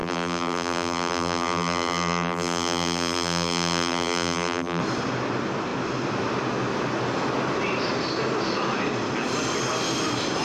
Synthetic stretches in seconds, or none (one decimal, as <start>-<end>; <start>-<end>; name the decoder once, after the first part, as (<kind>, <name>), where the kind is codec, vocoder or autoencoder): 0.0-4.8 (vocoder, BigVGAN v2)